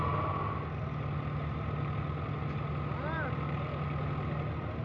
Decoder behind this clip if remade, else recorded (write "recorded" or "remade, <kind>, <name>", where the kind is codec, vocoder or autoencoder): recorded